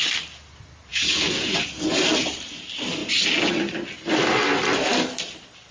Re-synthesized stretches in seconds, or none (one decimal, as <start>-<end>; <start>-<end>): 0.9-1.9